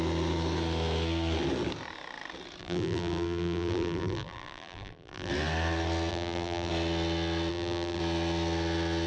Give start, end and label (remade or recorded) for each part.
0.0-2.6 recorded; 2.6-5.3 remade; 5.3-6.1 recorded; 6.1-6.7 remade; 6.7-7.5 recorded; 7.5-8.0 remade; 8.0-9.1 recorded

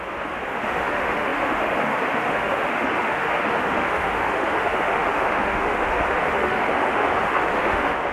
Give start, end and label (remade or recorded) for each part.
0.0-8.1 remade

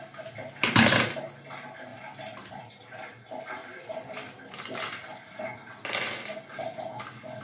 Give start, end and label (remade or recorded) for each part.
0.0-1.9 recorded; 1.9-2.6 remade; 2.6-3.6 recorded; 3.6-5.4 remade; 5.4-7.4 recorded

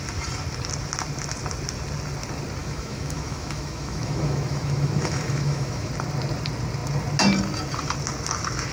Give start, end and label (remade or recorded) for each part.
0.0-2.6 recorded; 2.6-5.9 remade; 5.9-8.7 recorded